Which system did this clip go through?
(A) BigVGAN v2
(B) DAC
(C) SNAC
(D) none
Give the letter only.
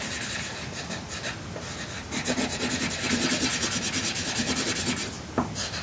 D